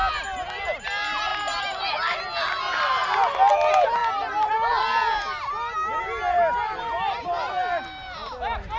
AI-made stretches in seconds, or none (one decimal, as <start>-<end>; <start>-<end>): none